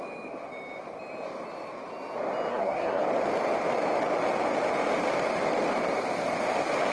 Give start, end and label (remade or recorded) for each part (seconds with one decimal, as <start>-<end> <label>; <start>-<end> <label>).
0.0-2.5 recorded; 2.5-3.0 remade; 3.0-6.9 recorded